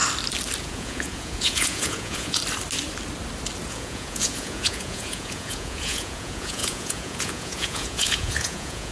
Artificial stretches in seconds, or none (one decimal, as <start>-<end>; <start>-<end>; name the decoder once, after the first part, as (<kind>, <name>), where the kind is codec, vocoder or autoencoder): 0.6-2.4 (vocoder, Vocos); 3.7-8.9